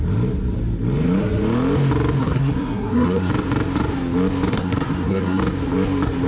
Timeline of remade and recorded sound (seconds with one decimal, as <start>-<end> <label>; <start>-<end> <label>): 0.0-2.2 recorded; 2.2-3.3 remade; 3.3-4.5 recorded; 4.5-5.4 remade; 5.4-6.3 recorded